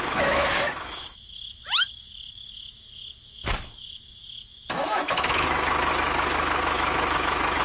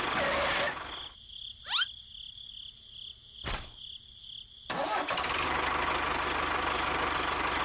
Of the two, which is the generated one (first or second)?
first